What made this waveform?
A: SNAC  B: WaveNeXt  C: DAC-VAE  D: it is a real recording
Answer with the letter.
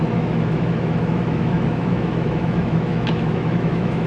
C